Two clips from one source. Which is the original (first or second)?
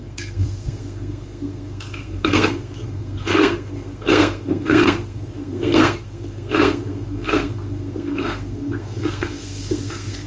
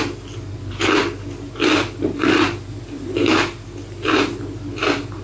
second